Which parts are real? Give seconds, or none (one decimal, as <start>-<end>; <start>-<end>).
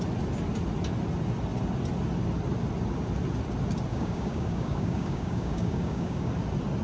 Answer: 0.0-3.9; 6.3-6.8